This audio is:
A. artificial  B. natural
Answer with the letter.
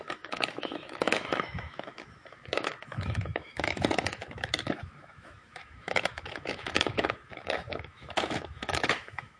A